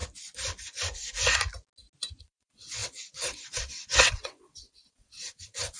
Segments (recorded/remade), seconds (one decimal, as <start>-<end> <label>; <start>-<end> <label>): 0.0-2.2 recorded; 2.2-5.8 remade